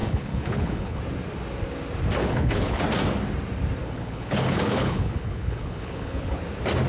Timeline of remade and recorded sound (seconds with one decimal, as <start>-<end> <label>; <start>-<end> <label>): 0.0-1.0 remade; 1.0-2.2 recorded; 2.2-2.8 remade; 2.8-3.8 recorded; 3.8-6.4 remade; 6.4-6.9 recorded